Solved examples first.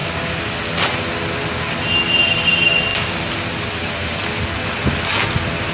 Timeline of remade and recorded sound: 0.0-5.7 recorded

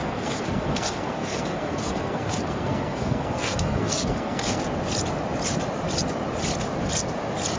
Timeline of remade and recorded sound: 0.0-4.6 remade; 4.6-7.6 recorded

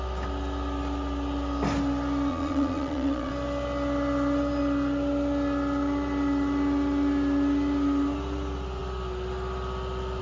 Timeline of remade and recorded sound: 0.0-2.3 recorded; 2.3-3.3 remade; 3.3-10.2 recorded

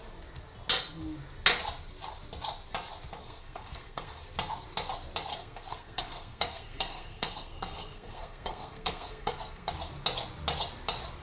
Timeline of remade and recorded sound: 0.0-3.2 recorded; 3.2-4.2 remade; 4.2-5.3 recorded; 5.3-9.7 remade; 9.7-11.2 recorded

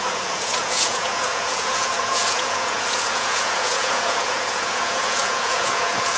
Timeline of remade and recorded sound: 0.0-6.2 remade

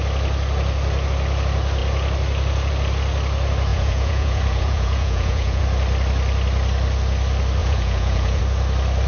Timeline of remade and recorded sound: 0.0-3.7 recorded; 3.7-5.6 remade; 5.6-7.6 recorded; 7.6-8.4 remade; 8.4-9.1 recorded

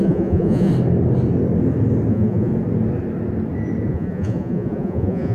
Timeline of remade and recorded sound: 0.0-0.7 remade; 0.7-2.1 recorded; 2.1-2.5 remade; 2.5-3.9 recorded; 3.9-5.3 remade